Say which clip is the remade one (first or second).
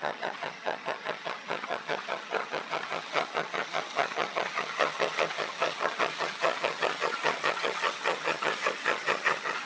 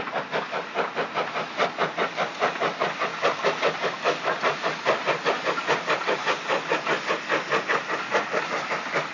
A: first